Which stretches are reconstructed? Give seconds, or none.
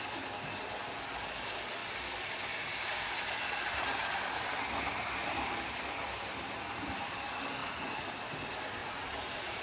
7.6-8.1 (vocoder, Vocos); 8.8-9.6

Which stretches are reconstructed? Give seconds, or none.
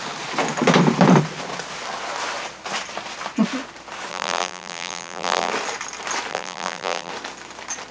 4.1-5.5 (vocoder, BigVGAN v2); 6.3-7.1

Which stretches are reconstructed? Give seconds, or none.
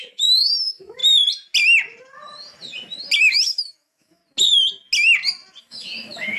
0.0-1.0 (autoencoder, DAC-VAE); 3.2-4.2; 5.6-6.4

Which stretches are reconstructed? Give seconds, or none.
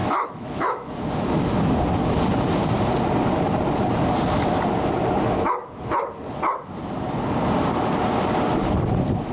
0.0-0.9 (autoencoder, DAC-VAE)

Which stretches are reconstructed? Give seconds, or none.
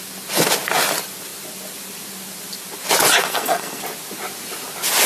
3.2-3.8 (codec, SNAC)